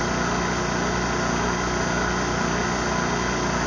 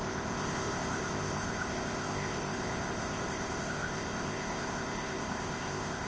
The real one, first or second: first